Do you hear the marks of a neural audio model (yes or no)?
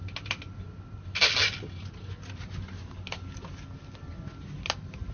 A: no